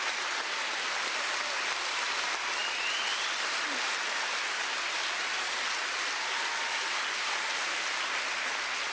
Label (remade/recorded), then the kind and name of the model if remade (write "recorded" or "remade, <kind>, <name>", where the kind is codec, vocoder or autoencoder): recorded